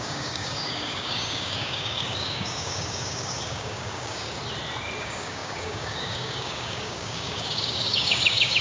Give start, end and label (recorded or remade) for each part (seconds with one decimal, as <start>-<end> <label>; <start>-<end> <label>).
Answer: 0.0-4.4 remade; 4.4-5.0 recorded; 5.0-8.6 remade